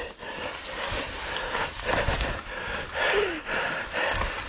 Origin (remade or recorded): recorded